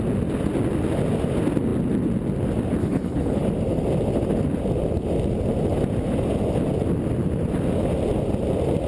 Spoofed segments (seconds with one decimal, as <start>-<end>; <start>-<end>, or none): 2.8-3.4